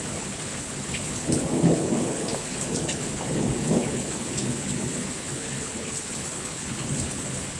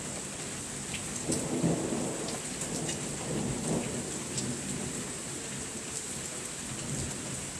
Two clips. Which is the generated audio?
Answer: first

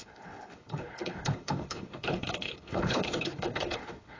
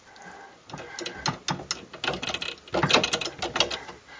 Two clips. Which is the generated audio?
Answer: first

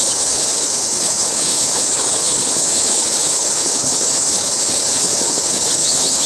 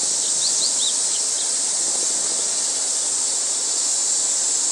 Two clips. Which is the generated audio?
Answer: first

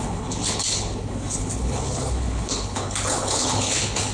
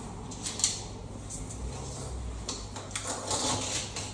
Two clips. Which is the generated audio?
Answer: first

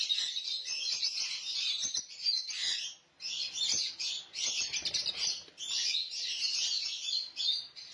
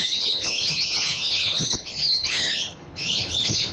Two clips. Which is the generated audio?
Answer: second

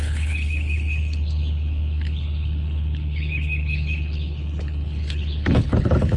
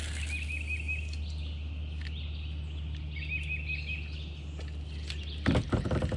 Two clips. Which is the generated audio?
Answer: first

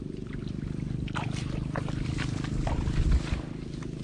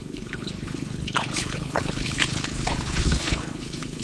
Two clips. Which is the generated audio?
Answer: second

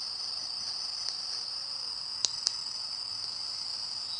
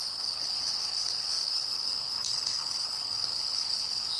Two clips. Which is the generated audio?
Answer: second